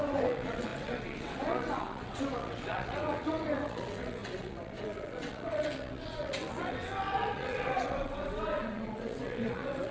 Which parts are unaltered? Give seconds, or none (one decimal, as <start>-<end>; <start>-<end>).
none